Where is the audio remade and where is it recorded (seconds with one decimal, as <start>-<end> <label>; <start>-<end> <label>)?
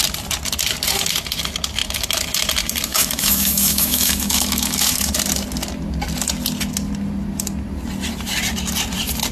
0.0-2.9 recorded; 2.9-5.1 remade; 5.1-9.3 recorded